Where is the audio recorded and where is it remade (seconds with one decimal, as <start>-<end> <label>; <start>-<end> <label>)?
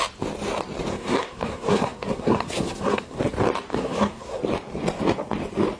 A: 0.0-0.9 recorded; 0.9-3.2 remade; 3.2-3.7 recorded; 3.7-4.4 remade; 4.4-5.8 recorded